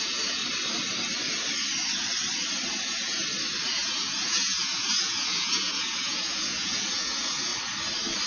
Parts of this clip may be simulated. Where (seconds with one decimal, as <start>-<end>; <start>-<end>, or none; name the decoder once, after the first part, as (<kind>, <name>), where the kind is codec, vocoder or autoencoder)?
0.0-0.4 (vocoder, Vocos); 2.7-3.2; 3.7-7.5